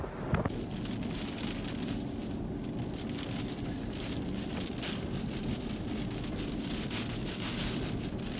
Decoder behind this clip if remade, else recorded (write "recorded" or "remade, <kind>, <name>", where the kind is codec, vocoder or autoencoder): recorded